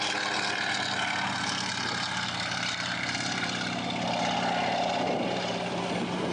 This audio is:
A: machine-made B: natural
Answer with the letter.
B